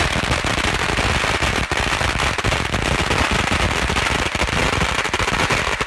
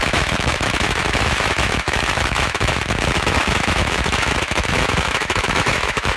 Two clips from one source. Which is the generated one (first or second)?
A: second